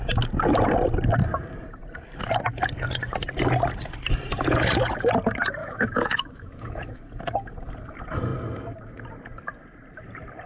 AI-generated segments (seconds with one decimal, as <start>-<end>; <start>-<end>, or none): 5.6-7.0